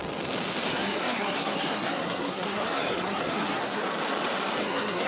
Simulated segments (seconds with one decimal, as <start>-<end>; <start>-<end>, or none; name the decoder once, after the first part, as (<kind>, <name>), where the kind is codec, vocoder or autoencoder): 0.7-3.8 (codec, SNAC); 4.6-5.1